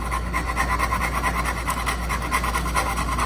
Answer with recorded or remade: recorded